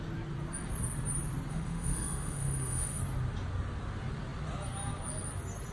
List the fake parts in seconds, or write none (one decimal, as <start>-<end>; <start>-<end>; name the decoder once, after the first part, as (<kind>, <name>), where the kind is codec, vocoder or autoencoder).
1.5-3.0 (autoencoder, DAC-VAE)